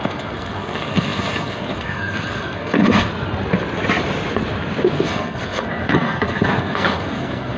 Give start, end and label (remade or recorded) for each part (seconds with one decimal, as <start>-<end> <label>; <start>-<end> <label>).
0.0-3.1 remade; 3.1-4.9 recorded; 4.9-7.6 remade

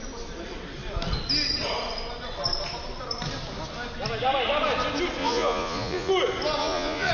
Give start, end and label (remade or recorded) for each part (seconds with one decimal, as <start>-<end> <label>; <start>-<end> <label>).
0.0-5.2 recorded; 5.2-6.1 remade; 6.1-6.6 recorded; 6.6-7.1 remade

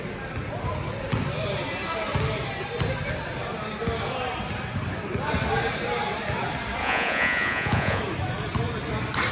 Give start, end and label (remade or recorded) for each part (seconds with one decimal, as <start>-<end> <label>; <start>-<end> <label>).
0.0-6.8 recorded; 6.8-8.0 remade; 8.0-9.3 recorded

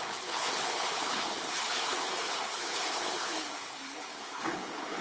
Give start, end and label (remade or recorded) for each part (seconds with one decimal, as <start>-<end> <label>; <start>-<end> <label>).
0.0-5.0 remade

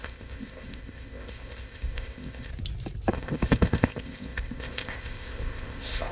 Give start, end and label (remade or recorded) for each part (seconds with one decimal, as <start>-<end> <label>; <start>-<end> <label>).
0.0-2.5 remade; 2.5-3.1 recorded; 3.1-6.1 remade

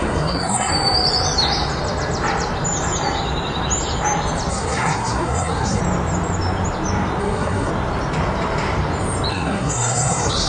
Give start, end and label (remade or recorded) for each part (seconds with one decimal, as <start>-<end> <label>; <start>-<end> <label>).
0.0-0.7 remade; 0.7-4.5 recorded; 4.5-5.8 remade; 5.8-7.2 recorded; 7.2-7.7 remade; 7.7-9.3 recorded; 9.3-10.5 remade

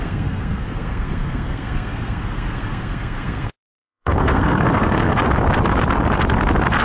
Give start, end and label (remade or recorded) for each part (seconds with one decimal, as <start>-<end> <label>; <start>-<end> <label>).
0.0-5.2 remade; 5.2-6.8 recorded